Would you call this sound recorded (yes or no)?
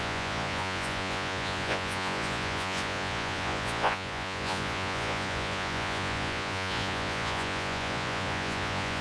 no